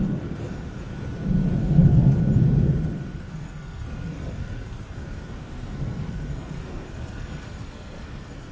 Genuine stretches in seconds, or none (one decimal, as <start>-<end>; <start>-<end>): 0.9-1.6; 2.2-3.2